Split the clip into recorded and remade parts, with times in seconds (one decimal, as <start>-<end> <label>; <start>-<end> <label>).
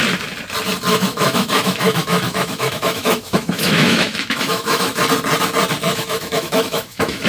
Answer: 0.0-0.9 recorded; 0.9-5.0 remade; 5.0-5.9 recorded; 5.9-7.3 remade